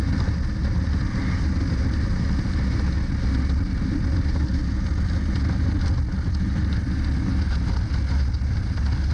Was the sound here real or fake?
real